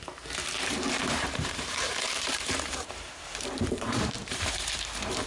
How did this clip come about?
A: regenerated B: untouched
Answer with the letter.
A